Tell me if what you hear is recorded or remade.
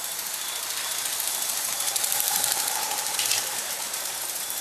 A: remade